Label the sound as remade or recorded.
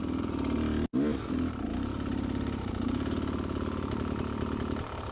recorded